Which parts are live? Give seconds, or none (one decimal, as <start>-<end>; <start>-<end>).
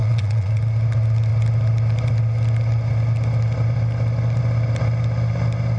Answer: 0.6-5.8